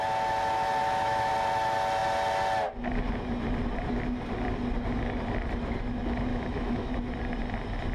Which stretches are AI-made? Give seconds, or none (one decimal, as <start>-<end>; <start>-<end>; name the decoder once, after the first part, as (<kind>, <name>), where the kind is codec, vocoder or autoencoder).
0.8-1.3 (autoencoder, DAC-VAE); 6.3-6.9